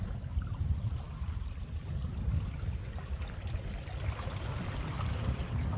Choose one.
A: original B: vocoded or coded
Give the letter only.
A